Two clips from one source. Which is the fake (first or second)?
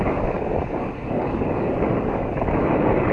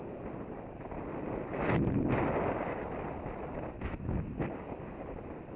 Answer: first